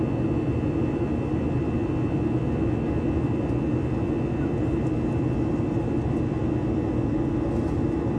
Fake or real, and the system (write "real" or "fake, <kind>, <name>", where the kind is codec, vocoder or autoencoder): real